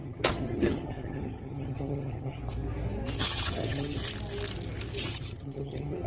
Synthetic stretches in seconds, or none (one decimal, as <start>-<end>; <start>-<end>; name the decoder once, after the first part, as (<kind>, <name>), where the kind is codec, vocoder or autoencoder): 0.0-2.4 (vocoder, HiFi-GAN); 3.2-4.0; 5.0-6.1